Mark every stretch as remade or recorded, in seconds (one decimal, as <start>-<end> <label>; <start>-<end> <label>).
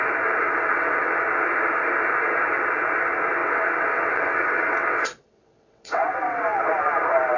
0.0-0.4 recorded; 0.4-1.2 remade; 1.2-3.4 recorded; 3.4-6.6 remade; 6.6-7.4 recorded